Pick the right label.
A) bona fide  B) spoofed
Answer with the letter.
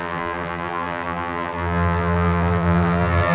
B